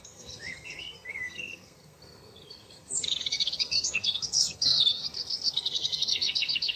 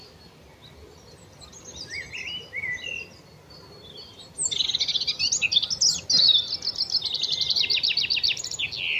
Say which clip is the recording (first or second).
second